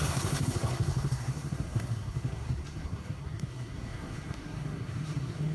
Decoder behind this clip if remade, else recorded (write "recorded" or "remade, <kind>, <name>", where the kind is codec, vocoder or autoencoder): remade, codec, SNAC